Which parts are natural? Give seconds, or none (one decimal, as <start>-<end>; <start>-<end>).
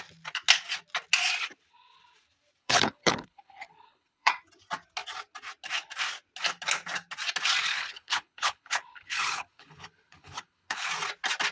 0.0-2.6; 4.3-7.7; 10.9-11.5